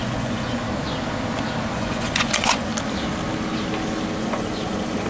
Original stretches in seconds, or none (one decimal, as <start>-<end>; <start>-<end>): 0.6-1.7; 2.7-4.2